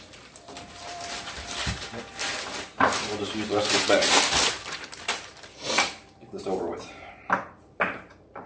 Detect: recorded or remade remade